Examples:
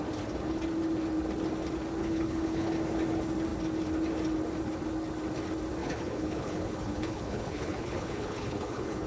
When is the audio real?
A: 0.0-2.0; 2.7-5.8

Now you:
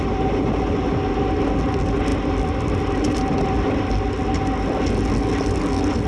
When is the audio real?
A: 0.0-6.1

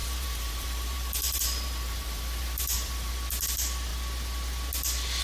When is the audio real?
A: 3.1-5.2

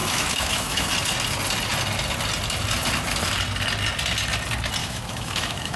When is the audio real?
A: 0.9-4.8

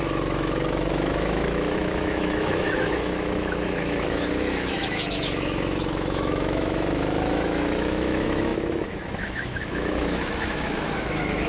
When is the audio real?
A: none

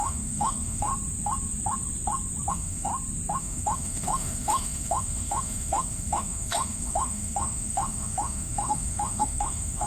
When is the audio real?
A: 0.9-2.5; 2.9-3.4

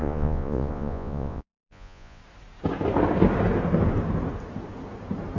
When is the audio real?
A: 2.2-5.4